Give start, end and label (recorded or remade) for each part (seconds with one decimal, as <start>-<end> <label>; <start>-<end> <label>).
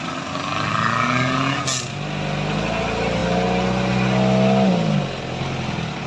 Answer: 0.0-6.1 recorded